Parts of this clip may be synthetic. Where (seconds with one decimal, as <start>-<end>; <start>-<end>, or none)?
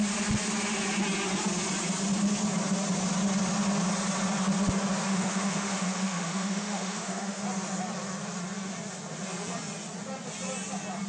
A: 5.1-7.4